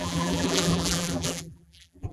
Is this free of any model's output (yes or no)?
no